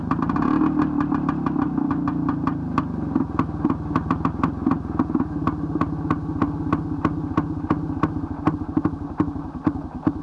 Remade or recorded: recorded